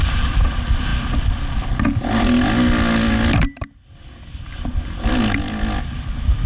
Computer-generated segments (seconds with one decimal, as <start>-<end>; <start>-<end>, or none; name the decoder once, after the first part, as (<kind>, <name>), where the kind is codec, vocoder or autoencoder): none